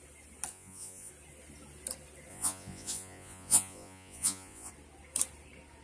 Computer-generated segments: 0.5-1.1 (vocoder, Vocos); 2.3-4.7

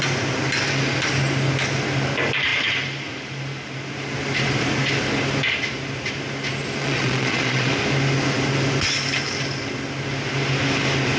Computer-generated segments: 6.8-7.7 (vocoder, Vocos)

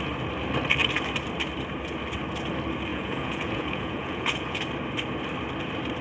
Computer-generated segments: 2.9-4.6 (vocoder, Vocos)

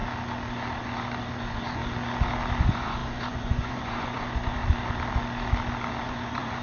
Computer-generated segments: 1.4-1.8 (vocoder, Vocos); 2.6-4.6; 6.0-6.6

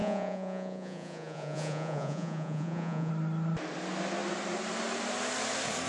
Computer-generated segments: 0.0-3.1 (vocoder, Vocos)